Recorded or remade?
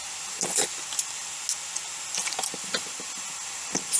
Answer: recorded